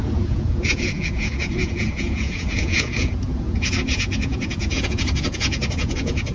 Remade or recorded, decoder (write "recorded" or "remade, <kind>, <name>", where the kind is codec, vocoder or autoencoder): remade, vocoder, Vocos